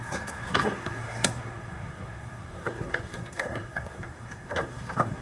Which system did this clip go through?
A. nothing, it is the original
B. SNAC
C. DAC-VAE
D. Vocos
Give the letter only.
B